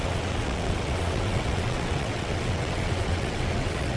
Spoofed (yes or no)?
yes